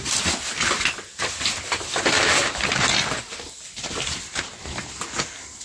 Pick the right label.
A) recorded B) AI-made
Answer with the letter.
A